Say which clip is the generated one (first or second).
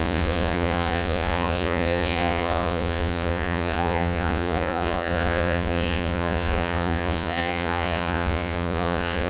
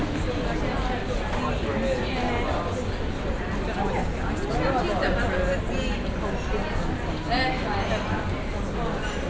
first